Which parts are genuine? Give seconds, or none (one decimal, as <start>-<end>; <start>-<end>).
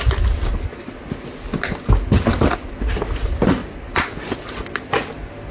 0.0-5.5